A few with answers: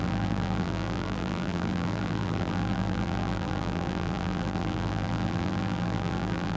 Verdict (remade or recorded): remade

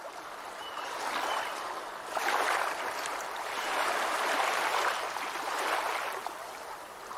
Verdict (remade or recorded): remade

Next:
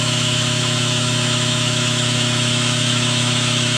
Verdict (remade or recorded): remade